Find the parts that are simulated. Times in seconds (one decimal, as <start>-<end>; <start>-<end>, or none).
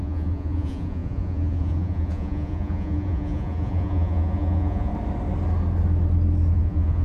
0.0-4.9; 6.5-7.0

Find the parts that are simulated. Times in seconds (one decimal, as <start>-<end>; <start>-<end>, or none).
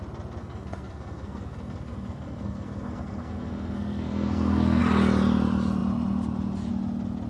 0.4-4.8